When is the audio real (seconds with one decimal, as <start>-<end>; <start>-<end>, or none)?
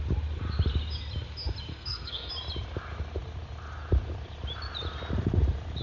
0.0-1.7; 2.3-5.8